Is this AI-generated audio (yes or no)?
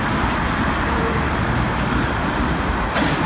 no